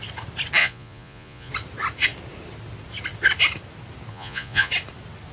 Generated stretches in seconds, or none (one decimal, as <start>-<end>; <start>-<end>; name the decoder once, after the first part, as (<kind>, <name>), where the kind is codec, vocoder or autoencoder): 0.6-1.5 (vocoder, Vocos); 4.1-4.7

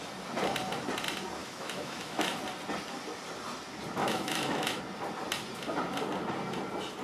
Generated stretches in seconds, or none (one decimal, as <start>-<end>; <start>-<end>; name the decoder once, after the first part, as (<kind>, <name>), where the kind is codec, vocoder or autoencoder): 1.4-2.4 (autoencoder, DAC-VAE); 4.0-4.8

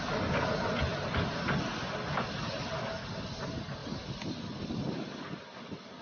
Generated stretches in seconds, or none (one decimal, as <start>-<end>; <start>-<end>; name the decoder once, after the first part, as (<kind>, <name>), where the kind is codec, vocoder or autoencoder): none

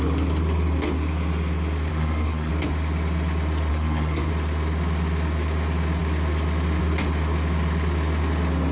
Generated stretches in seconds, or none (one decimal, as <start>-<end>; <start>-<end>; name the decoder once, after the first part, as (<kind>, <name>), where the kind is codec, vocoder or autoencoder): 1.9-2.5 (codec, SNAC); 3.7-4.3

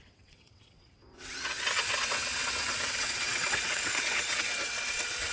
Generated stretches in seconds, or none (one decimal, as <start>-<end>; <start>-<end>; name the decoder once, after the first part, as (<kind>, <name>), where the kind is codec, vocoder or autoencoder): 0.0-5.3 (vocoder, WaveNeXt)

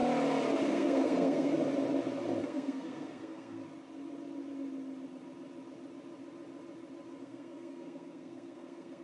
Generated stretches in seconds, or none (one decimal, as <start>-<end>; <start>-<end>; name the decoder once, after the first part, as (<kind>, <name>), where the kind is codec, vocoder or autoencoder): 0.7-1.5 (codec, SNAC); 2.4-3.6; 7.2-9.0